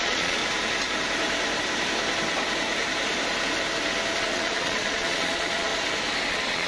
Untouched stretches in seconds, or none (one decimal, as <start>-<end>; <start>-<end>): 0.4-4.2; 5.7-6.3

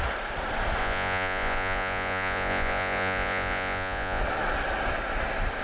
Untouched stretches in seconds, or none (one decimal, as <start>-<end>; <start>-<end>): 0.0-0.8; 4.2-5.6